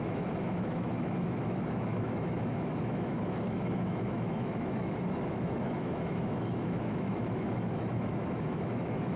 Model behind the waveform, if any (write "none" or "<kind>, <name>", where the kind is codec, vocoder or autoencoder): autoencoder, DAC-VAE